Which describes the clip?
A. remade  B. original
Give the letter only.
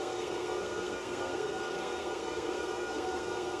A